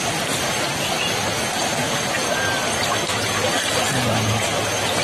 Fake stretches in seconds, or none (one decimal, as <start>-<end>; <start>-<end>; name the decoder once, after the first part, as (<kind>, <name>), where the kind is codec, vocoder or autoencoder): 1.3-2.1 (vocoder, BigVGAN v2); 3.1-3.7